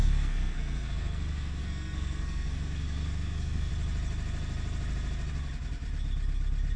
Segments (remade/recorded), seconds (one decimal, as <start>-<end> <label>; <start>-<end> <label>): 0.0-3.7 remade; 3.7-6.8 recorded